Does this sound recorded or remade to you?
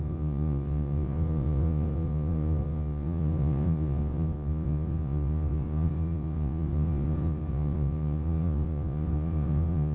remade